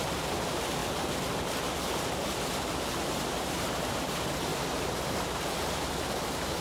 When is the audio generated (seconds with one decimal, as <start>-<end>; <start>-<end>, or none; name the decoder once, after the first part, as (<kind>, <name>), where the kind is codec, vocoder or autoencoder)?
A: 0.0-0.8 (vocoder, BigVGAN v2); 2.9-6.6